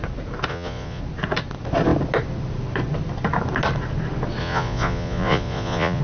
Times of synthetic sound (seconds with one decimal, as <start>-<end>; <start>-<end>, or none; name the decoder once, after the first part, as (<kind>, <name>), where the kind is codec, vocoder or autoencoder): 0.5-1.0 (vocoder, Vocos); 4.4-6.0